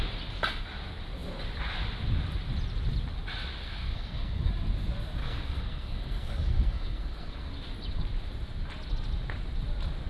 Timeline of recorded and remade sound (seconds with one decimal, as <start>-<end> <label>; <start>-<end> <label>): 0.0-3.6 recorded; 3.6-4.5 remade; 4.5-5.2 recorded; 5.2-7.5 remade; 7.5-10.1 recorded

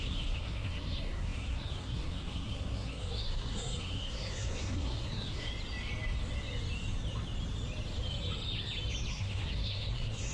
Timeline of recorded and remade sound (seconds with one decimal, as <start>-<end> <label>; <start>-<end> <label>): 0.0-5.5 remade; 5.5-9.1 recorded; 9.1-10.3 remade

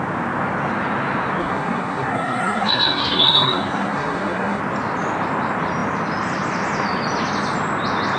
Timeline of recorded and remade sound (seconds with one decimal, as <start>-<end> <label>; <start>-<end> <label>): 0.0-1.4 recorded; 1.4-4.6 remade; 4.6-8.2 recorded